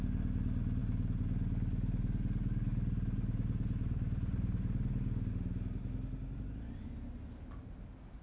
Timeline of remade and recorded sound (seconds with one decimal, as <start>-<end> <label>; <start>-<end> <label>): 0.0-8.2 recorded